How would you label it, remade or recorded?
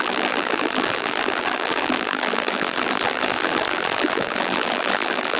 remade